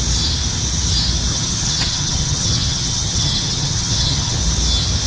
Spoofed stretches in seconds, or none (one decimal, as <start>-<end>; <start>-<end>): 1.3-4.4

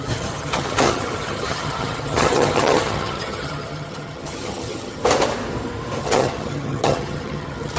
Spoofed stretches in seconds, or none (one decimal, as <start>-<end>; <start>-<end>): 0.0-5.0; 6.0-7.8

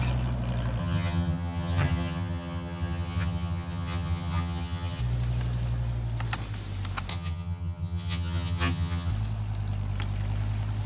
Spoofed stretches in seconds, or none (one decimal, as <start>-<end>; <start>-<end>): 0.8-5.0; 7.1-9.1

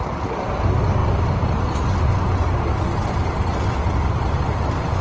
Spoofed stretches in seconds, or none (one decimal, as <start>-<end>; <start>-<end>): none

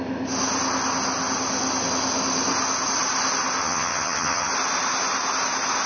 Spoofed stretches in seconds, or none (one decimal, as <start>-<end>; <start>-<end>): 3.6-4.5

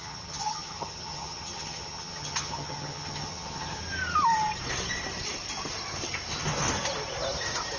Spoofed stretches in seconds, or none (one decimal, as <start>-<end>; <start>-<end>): 0.0-3.8

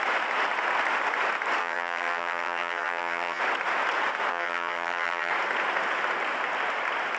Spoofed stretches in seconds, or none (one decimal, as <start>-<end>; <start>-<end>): 1.6-3.4; 4.3-5.3

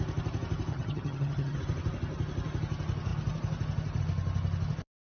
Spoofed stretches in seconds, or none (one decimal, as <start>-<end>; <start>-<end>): 0.7-1.6